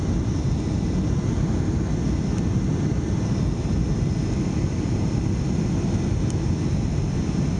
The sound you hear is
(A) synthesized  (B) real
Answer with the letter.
B